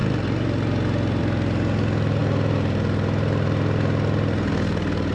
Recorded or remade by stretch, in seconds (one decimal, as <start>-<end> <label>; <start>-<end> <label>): 0.0-5.1 recorded